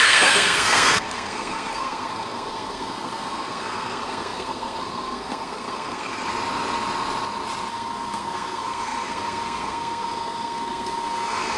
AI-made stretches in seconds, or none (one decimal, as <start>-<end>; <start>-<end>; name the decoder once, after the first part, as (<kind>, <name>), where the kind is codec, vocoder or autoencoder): 0.0-6.1 (codec, SNAC); 7.7-11.6